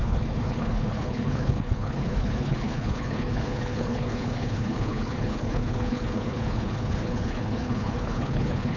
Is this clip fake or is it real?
fake